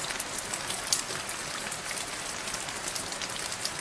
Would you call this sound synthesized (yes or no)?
no